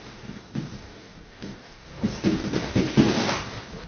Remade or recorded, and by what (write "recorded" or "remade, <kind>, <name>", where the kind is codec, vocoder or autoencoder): remade, codec, DAC